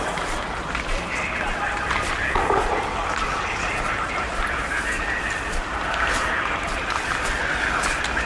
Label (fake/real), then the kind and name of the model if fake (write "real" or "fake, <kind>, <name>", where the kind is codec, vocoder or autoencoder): real